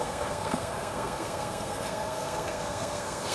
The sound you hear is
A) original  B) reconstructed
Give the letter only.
B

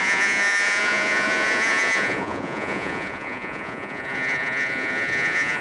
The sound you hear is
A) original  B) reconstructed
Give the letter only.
B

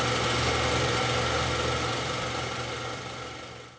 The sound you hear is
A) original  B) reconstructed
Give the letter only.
A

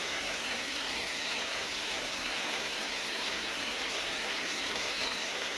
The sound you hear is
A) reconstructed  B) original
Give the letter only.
A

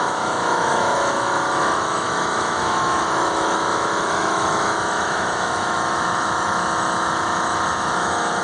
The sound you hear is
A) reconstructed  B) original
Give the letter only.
A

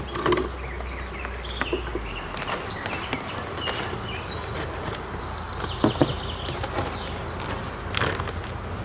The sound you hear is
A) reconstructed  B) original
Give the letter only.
B